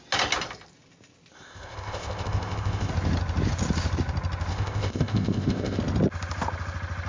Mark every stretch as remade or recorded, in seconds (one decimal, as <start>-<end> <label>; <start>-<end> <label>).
0.0-1.3 recorded; 1.3-2.9 remade; 2.9-4.5 recorded; 4.5-5.8 remade; 5.8-7.1 recorded